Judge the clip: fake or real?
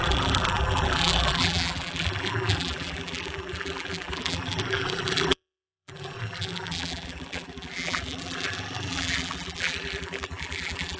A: fake